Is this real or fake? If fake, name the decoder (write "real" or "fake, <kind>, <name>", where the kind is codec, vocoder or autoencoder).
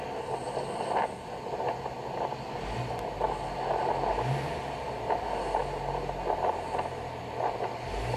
real